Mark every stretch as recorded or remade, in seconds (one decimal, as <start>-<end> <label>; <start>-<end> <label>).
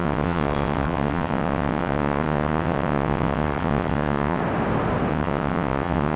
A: 0.0-4.4 remade; 4.4-5.1 recorded; 5.1-6.2 remade